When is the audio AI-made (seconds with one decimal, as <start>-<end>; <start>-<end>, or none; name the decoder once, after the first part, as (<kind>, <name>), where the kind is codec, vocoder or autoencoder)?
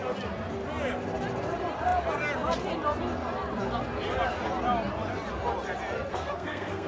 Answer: 6.1-6.9 (codec, SNAC)